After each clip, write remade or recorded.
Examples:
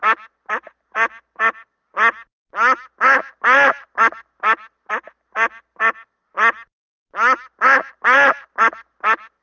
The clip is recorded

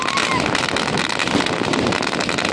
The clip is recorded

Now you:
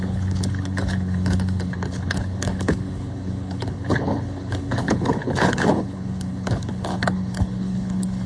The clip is remade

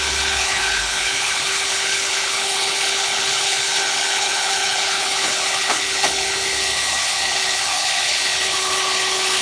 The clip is remade